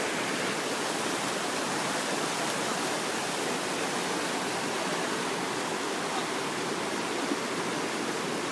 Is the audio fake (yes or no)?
no